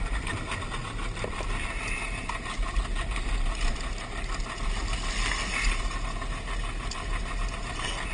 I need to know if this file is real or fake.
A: real